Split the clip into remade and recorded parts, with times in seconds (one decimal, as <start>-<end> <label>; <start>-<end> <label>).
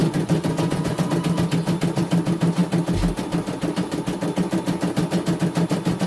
0.0-1.1 remade; 1.1-6.1 recorded